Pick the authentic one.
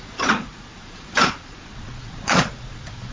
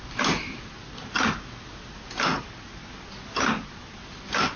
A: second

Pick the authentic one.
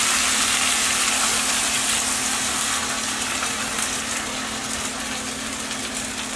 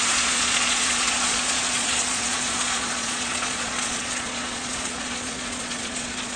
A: first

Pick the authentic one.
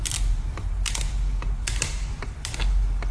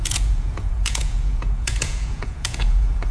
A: first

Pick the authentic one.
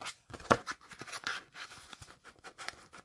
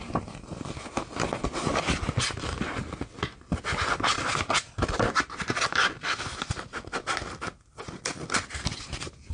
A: second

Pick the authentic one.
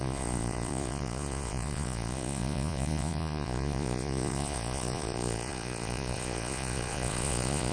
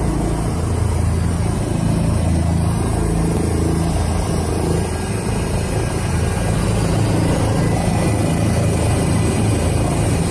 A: second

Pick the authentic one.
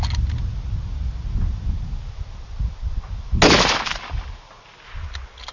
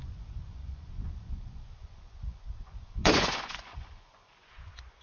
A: first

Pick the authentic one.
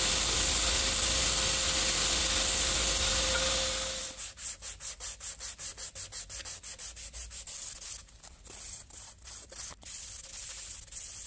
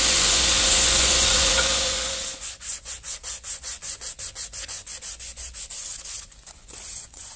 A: first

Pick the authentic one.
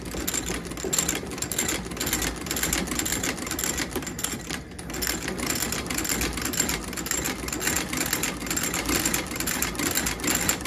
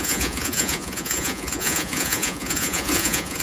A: first